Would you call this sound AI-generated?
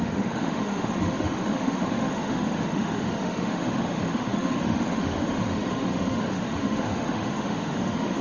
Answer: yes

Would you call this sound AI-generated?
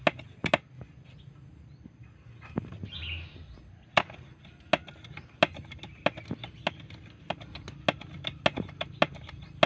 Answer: no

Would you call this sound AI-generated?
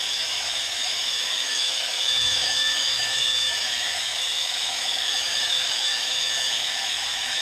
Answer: yes